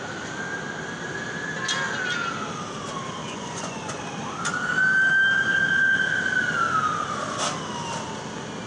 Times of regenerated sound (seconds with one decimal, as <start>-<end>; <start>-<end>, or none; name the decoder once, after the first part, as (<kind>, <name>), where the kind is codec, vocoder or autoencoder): 3.2-4.0 (vocoder, Vocos)